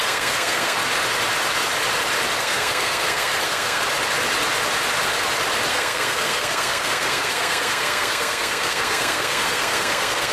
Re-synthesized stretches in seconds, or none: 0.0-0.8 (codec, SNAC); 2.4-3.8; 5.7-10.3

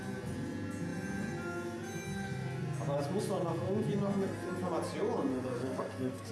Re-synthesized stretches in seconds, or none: 5.3-6.3 (codec, SNAC)

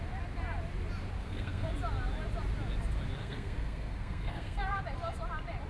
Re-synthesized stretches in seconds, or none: 1.2-1.7 (codec, SNAC); 3.2-4.8